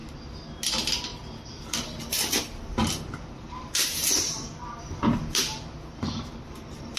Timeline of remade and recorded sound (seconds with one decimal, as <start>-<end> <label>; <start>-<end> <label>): 0.0-1.1 recorded; 1.1-2.4 remade; 2.4-2.8 recorded; 2.8-7.0 remade